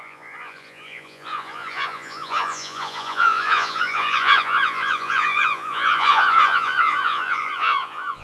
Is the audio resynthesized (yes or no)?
yes